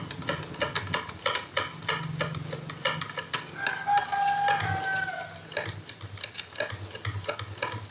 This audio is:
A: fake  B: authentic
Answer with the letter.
B